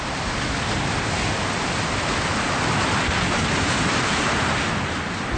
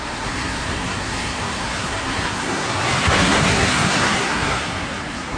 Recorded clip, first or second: first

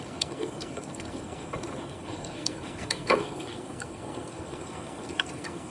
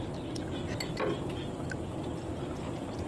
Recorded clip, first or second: second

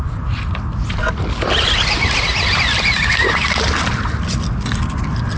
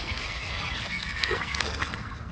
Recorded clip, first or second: first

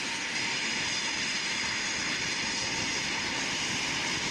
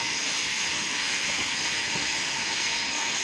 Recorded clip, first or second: first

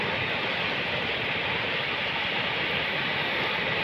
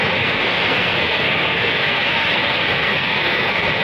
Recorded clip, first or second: first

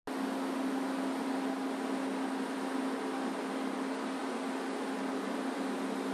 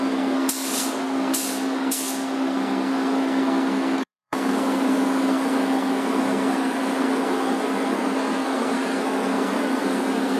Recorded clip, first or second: first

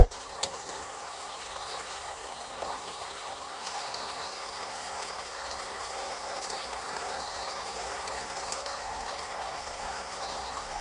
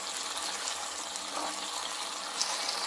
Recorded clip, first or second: second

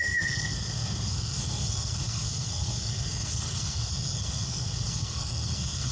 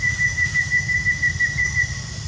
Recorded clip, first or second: second